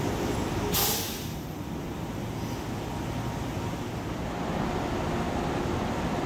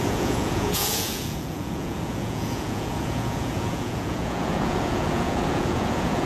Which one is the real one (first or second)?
first